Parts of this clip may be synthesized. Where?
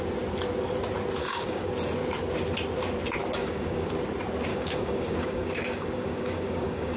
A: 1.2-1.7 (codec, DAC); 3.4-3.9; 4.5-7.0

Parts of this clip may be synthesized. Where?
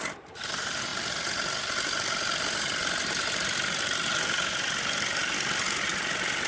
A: none